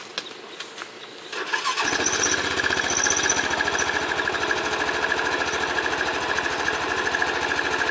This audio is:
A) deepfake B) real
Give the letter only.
B